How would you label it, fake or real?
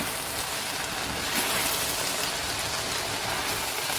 real